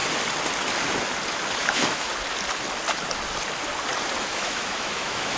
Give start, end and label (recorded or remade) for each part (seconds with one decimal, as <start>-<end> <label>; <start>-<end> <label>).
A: 0.0-1.5 recorded; 1.5-2.1 remade; 2.1-4.2 recorded; 4.2-5.4 remade